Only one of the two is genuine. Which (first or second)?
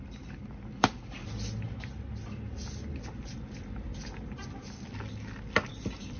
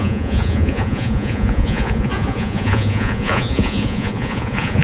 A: first